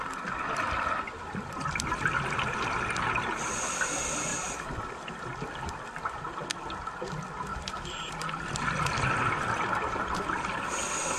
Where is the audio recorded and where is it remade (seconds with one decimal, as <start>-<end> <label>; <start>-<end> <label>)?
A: 0.0-11.2 recorded